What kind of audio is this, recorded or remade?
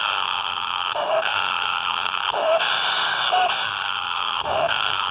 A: remade